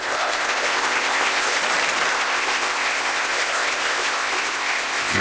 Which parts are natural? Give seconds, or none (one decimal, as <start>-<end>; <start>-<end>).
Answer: 1.6-2.1